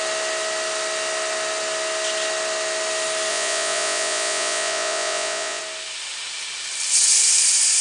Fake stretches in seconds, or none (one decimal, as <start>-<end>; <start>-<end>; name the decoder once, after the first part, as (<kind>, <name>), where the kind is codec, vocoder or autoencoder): 3.3-5.6 (vocoder, Vocos)